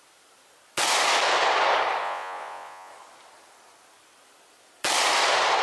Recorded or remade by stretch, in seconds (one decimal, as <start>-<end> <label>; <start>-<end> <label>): 0.0-2.0 recorded; 2.0-2.9 remade; 2.9-5.6 recorded